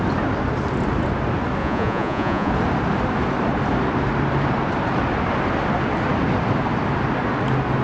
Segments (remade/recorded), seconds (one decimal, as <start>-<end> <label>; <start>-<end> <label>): 0.0-1.6 recorded; 1.6-2.5 remade; 2.5-7.8 recorded